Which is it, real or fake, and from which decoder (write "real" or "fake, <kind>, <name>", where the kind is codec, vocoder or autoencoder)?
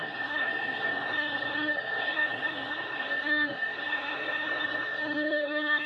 fake, codec, SNAC